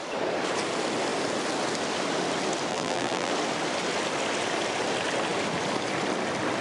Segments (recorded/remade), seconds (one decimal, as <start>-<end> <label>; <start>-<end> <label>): 0.0-2.7 recorded; 2.7-3.3 remade; 3.3-6.6 recorded